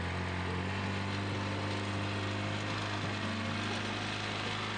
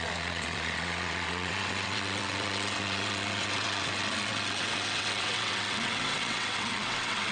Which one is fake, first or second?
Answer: second